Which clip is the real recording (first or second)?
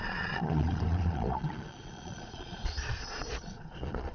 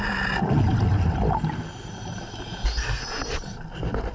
second